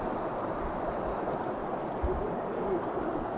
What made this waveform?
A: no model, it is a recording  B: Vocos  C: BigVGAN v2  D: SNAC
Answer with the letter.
A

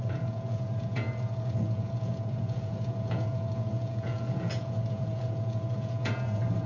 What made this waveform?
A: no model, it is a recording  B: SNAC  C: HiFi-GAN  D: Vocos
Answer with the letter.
D